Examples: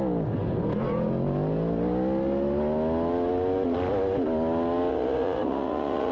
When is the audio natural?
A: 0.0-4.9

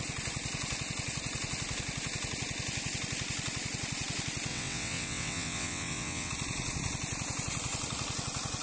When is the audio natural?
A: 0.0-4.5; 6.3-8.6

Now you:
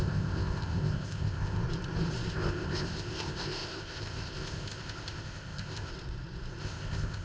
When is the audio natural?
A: 1.6-2.3; 5.9-6.6

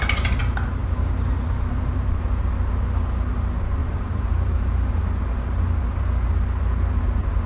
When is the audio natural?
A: 0.0-3.8; 5.0-7.5

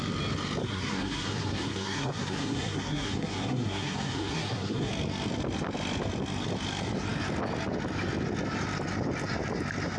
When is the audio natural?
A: 0.0-0.6; 4.9-10.0

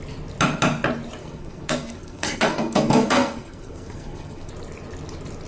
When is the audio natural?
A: 0.0-1.2; 4.5-5.5